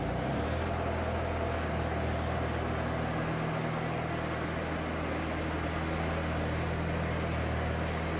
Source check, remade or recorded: recorded